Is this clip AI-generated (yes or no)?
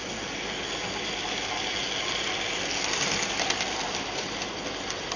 no